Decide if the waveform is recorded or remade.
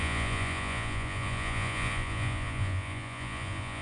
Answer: remade